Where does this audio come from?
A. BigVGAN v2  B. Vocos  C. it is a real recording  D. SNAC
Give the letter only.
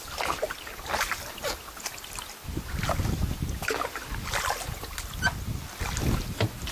C